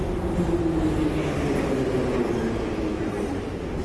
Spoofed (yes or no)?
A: no